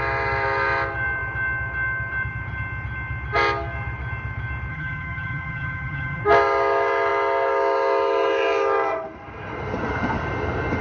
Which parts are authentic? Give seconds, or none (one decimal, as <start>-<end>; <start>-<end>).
0.0-4.7; 6.2-10.8